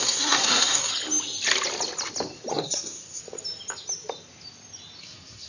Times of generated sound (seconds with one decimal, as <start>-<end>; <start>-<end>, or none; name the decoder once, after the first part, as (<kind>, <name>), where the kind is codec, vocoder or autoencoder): 0.0-0.9 (codec, SNAC); 2.5-3.2; 5.0-5.5